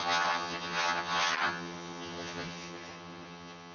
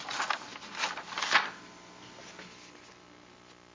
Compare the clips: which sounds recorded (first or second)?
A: second